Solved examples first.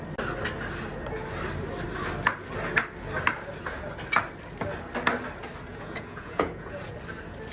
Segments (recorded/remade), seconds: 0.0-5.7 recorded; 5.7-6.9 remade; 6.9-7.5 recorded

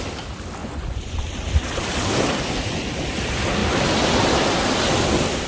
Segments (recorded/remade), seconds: 0.0-0.6 recorded; 0.6-1.2 remade; 1.2-5.5 recorded

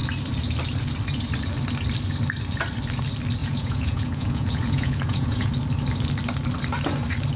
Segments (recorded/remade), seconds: 0.0-3.4 recorded; 3.4-5.5 remade; 5.5-7.4 recorded

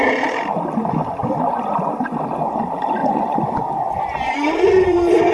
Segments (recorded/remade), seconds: 0.0-3.0 recorded; 3.0-5.3 remade